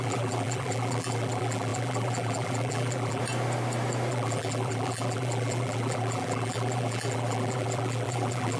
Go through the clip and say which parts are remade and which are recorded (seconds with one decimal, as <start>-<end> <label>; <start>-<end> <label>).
0.0-3.2 remade; 3.2-4.1 recorded; 4.1-8.6 remade